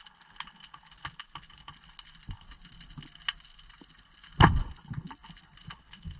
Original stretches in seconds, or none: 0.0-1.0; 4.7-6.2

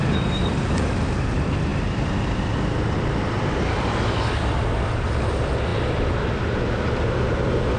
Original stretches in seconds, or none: none